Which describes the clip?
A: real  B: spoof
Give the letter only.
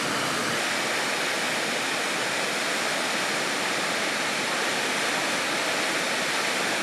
A